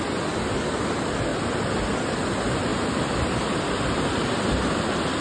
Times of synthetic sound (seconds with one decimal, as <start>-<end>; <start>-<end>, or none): none